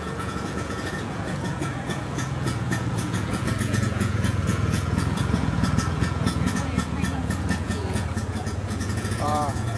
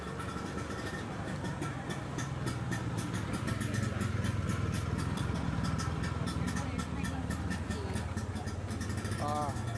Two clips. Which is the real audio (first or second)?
second